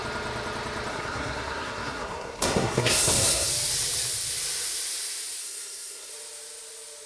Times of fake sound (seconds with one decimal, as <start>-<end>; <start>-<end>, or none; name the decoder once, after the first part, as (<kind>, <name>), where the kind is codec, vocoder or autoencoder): 0.9-3.5 (codec, SNAC); 5.4-6.1